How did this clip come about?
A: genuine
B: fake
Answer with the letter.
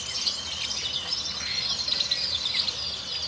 A